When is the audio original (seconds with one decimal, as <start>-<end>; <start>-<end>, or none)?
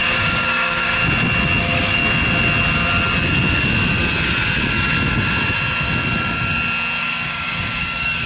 1.0-1.6; 2.0-7.0